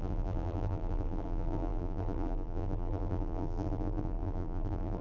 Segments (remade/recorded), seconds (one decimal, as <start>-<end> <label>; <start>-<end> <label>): 0.0-5.0 remade